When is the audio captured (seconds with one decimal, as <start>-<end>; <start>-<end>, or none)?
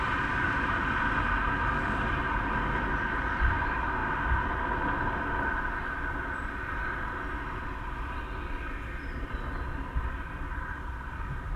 0.0-11.6